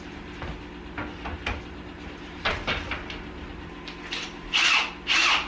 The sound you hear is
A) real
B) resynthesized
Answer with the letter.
B